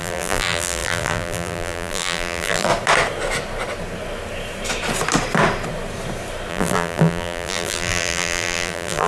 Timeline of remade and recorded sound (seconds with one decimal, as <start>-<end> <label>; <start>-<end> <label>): 0.0-2.7 remade; 2.7-6.5 recorded; 6.5-9.1 remade